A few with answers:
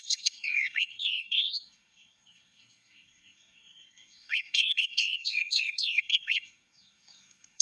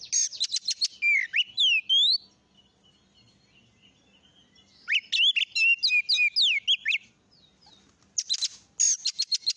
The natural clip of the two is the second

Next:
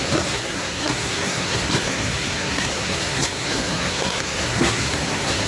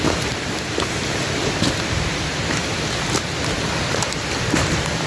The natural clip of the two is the second